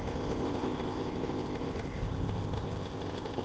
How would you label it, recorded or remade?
remade